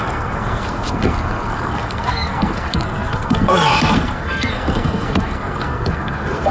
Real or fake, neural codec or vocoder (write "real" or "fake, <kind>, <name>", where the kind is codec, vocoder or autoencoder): fake, codec, SNAC